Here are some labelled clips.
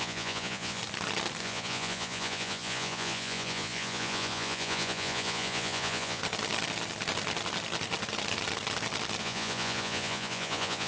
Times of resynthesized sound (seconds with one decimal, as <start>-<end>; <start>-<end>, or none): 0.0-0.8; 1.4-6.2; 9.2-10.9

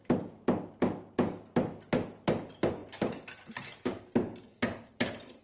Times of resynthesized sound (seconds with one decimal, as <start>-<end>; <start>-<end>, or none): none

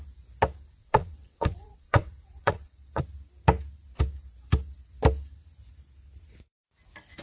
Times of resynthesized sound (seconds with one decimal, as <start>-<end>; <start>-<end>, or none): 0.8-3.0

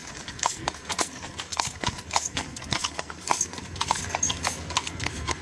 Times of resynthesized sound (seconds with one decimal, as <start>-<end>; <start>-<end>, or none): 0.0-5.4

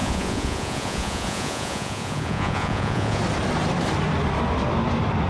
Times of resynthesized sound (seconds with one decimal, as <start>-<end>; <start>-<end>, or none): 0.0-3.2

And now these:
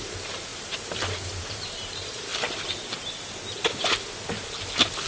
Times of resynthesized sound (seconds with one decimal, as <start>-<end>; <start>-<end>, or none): 0.0-0.5; 1.4-2.3